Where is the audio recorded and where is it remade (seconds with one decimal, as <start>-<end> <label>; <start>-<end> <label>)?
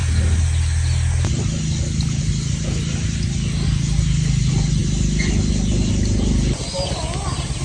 0.0-7.6 recorded